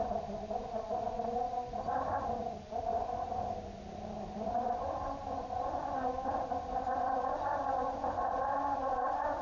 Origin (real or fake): real